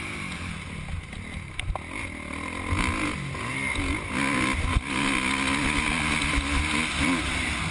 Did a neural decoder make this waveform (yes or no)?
no